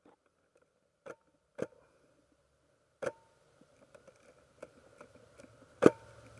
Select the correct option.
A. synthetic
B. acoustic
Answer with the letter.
A